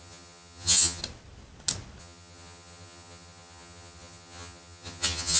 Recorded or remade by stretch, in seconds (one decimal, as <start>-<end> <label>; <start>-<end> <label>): 0.0-1.0 remade; 1.0-2.0 recorded; 2.0-5.4 remade